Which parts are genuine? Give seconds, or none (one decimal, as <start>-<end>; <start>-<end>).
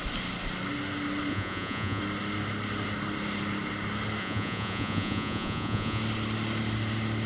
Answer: 0.0-1.3; 2.0-4.2; 6.0-7.3